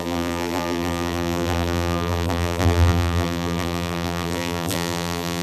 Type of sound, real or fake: fake